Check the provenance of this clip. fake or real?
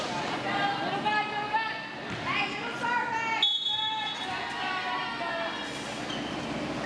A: real